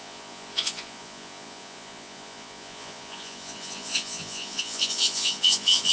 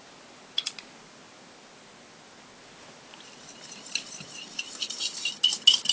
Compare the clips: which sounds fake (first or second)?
first